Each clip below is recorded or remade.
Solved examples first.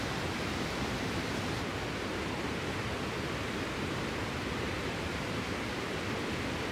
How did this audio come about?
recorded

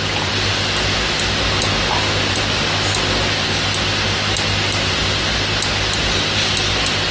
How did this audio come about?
recorded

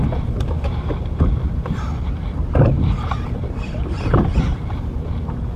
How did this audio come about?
recorded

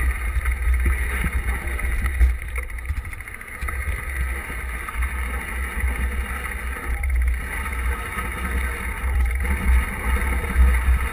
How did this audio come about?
recorded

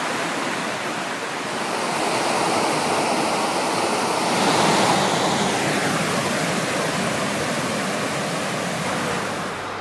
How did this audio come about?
recorded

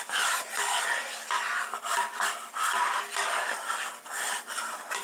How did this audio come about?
remade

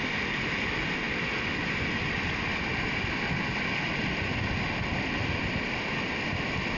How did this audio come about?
recorded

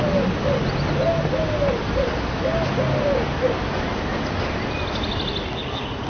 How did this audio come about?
recorded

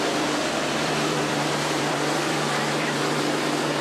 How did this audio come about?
remade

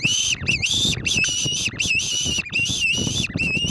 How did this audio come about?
remade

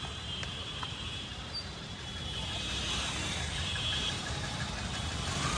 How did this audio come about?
remade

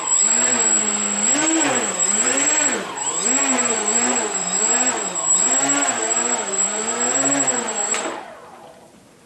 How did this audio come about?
remade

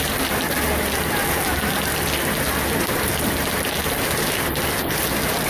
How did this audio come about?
recorded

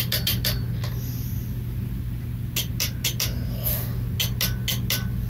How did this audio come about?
recorded